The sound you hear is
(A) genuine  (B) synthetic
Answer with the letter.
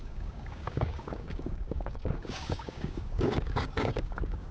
B